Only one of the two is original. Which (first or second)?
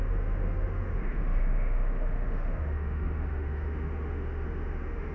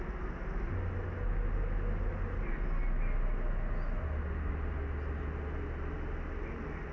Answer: second